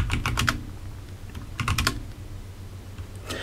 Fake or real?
real